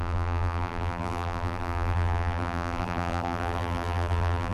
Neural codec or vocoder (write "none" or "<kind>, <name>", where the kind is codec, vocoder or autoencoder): vocoder, BigVGAN v2